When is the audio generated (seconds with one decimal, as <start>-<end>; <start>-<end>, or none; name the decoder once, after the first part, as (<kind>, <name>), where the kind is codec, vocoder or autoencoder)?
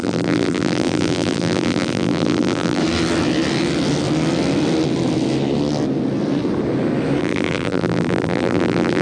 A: 0.0-2.8 (vocoder, BigVGAN v2); 7.2-9.0